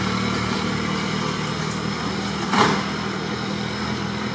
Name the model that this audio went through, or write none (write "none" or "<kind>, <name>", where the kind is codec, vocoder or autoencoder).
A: none